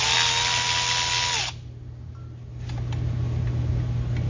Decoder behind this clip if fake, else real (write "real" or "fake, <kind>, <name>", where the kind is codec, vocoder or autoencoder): real